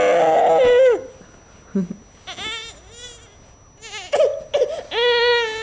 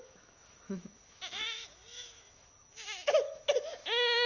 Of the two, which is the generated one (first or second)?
second